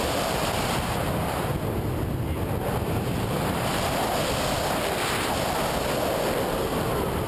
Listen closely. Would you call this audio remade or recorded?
recorded